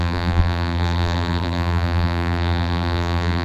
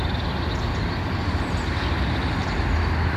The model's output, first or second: first